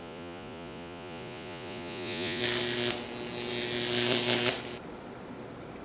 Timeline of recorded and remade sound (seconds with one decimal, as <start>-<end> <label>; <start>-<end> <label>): 0.0-2.4 remade; 2.4-5.8 recorded